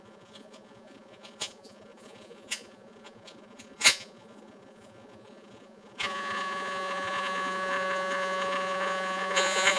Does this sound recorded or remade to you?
remade